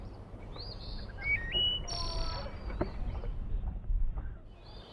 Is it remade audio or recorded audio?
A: remade